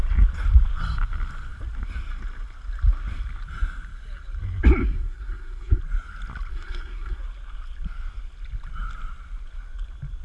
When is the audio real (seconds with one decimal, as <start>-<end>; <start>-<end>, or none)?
0.0-4.8; 5.8-6.5; 7.2-10.2